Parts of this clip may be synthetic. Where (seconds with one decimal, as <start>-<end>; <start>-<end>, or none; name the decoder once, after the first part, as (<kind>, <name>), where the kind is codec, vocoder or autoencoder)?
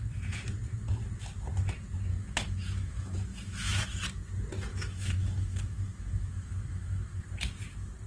2.1-3.8 (autoencoder, DAC-VAE); 4.7-7.2